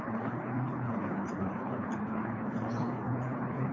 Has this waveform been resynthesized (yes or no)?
yes